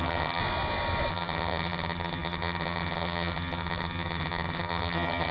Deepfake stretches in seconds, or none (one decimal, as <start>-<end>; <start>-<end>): 0.0-0.4; 1.1-5.3

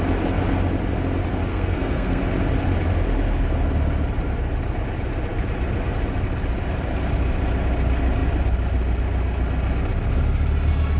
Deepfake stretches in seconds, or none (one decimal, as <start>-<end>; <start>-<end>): 1.5-2.2

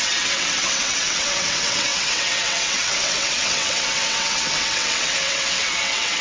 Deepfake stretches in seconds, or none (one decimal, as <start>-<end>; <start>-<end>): 0.0-6.2

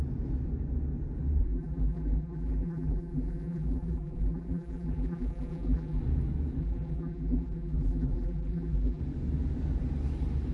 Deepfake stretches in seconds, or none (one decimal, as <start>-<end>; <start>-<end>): 1.4-6.0; 6.6-9.0

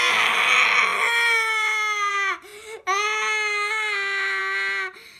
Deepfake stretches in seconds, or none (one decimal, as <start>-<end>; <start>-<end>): none

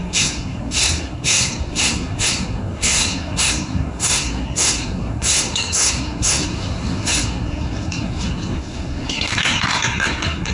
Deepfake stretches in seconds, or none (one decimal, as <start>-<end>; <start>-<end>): 0.0-10.5

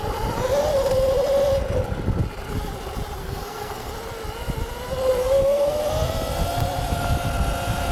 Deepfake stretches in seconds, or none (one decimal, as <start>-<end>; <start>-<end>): 3.2-3.9; 5.2-5.8

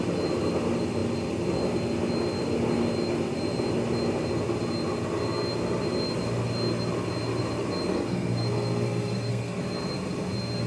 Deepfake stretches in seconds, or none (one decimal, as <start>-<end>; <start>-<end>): 7.9-9.6